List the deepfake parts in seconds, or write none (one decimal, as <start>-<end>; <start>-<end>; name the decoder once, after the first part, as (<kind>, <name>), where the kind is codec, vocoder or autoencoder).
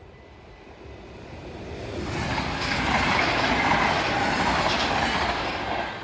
none